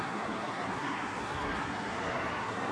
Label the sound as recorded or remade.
remade